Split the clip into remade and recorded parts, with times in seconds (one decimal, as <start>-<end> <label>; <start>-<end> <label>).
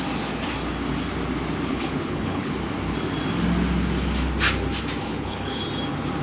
0.0-1.7 recorded; 1.7-2.5 remade; 2.5-5.0 recorded; 5.0-5.6 remade; 5.6-6.2 recorded